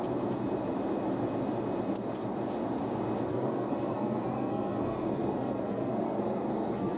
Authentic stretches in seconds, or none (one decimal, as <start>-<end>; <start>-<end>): 0.0-3.3